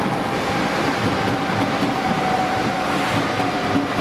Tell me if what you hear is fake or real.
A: real